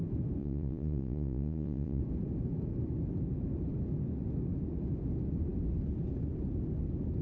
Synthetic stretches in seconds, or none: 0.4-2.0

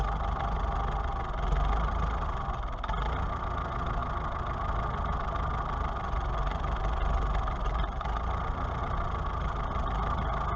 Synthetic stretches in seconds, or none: none

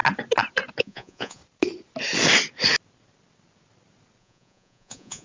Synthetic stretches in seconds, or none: 0.8-1.4; 4.2-5.2

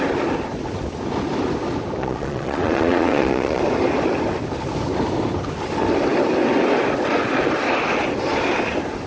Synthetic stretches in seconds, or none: 2.0-3.6